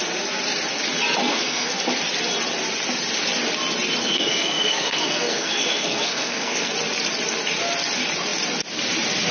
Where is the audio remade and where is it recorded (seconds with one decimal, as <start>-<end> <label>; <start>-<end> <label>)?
0.0-1.2 recorded; 1.2-1.8 remade; 1.8-4.0 recorded; 4.0-6.7 remade; 6.7-9.3 recorded